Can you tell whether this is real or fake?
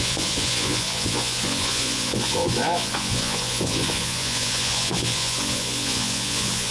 fake